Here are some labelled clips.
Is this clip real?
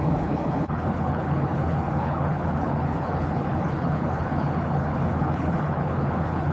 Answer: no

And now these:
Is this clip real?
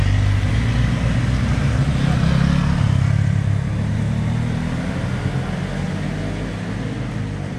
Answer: yes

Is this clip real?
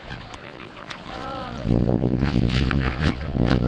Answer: no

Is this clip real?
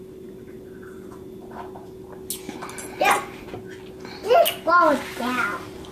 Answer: yes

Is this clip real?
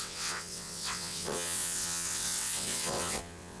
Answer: no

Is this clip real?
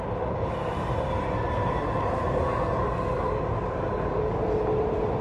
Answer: yes